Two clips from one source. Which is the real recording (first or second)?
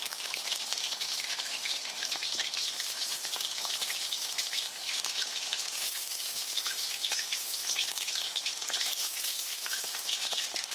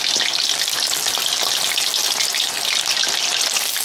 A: second